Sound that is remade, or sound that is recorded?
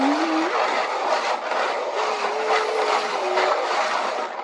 recorded